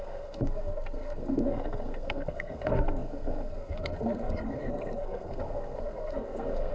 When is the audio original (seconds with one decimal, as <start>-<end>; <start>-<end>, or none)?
none